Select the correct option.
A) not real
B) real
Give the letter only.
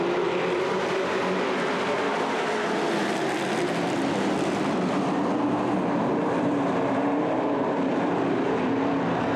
A